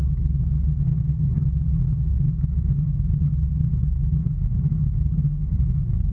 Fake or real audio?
real